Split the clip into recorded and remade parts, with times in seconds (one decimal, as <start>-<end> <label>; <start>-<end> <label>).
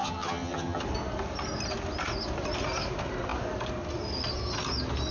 0.0-0.8 remade; 0.8-5.1 recorded